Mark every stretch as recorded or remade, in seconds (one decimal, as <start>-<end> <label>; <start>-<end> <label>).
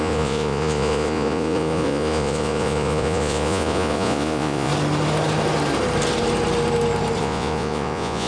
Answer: 0.0-4.7 remade; 4.7-7.2 recorded; 7.2-8.3 remade